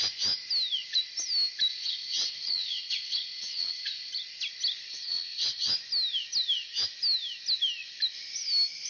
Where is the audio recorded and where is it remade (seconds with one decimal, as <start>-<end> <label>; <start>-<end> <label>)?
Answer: 0.0-1.7 recorded; 1.7-4.1 remade; 4.1-4.9 recorded; 4.9-5.7 remade; 5.7-8.9 recorded